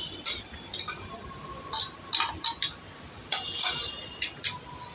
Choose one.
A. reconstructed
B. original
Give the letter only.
B